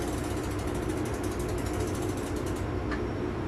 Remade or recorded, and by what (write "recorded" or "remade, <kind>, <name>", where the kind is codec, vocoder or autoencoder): recorded